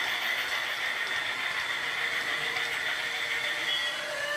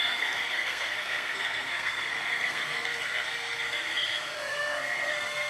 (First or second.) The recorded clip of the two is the first